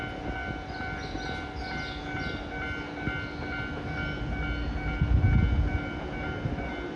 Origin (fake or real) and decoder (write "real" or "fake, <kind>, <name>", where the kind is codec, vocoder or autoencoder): real